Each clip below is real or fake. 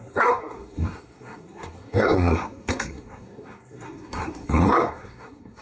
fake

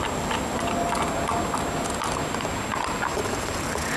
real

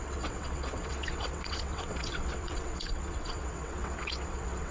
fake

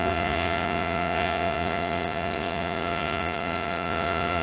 fake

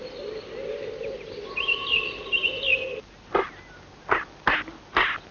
real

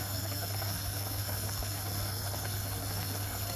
fake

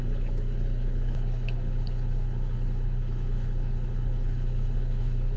fake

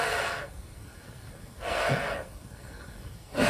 fake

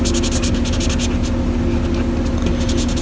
real